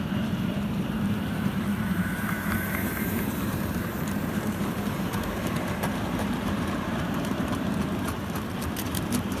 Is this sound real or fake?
fake